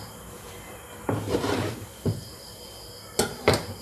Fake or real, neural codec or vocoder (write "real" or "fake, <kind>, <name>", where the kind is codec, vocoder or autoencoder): fake, vocoder, BigVGAN v2